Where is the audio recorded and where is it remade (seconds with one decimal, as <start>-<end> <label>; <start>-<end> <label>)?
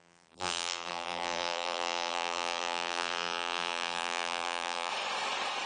0.0-4.9 remade; 4.9-5.7 recorded